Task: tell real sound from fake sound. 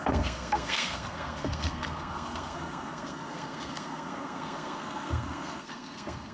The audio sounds fake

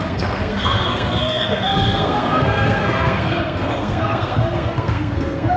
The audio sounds fake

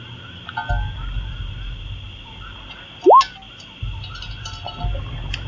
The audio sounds real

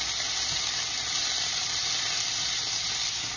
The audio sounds real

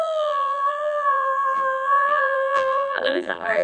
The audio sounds fake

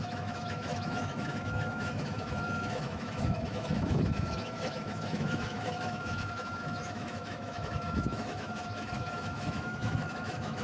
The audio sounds fake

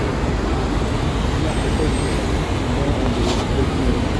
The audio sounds real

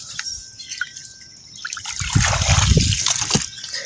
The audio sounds real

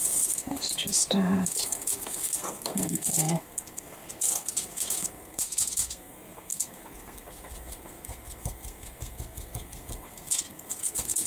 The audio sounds fake